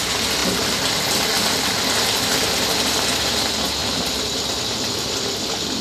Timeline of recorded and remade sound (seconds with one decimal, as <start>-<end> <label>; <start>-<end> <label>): 0.0-5.8 recorded